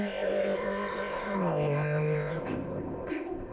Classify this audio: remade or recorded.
remade